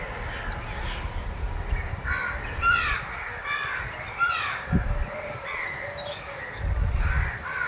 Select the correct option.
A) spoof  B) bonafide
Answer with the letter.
B